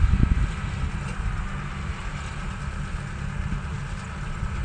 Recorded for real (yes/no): yes